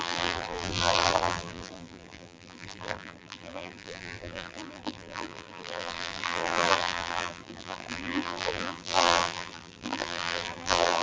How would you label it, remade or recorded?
remade